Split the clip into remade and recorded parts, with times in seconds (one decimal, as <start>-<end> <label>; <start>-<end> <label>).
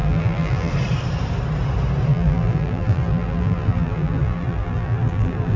0.0-0.7 remade; 0.7-2.1 recorded; 2.1-5.6 remade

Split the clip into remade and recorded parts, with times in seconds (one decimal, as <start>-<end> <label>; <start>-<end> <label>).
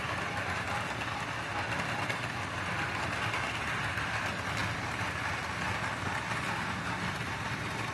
0.0-7.9 recorded